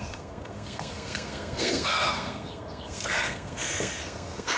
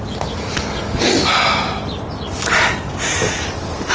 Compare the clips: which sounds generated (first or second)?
first